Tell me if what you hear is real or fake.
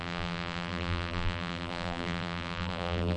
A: fake